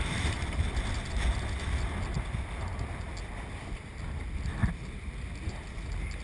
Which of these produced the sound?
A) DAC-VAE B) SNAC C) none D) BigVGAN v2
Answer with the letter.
C